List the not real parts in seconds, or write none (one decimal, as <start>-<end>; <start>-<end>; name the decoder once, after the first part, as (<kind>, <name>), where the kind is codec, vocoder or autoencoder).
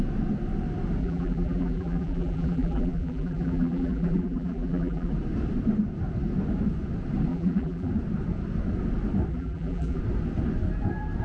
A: 1.0-5.1 (vocoder, BigVGAN v2); 7.3-7.9; 9.3-10.0